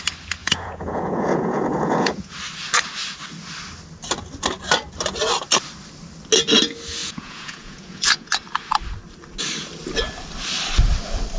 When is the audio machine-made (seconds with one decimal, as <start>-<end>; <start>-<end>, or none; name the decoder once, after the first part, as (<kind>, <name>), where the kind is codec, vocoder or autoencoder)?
0.4-2.3 (vocoder, Vocos); 7.0-8.3